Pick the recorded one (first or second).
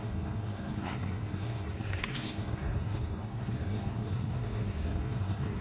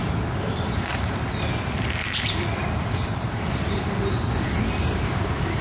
second